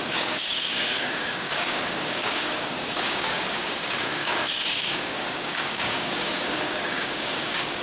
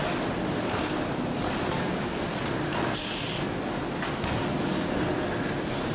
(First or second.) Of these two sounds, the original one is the second